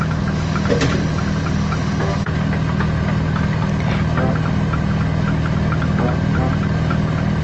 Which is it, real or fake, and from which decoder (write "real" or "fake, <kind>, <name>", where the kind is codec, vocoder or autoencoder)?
real